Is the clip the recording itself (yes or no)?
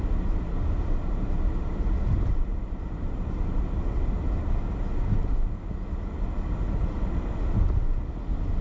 yes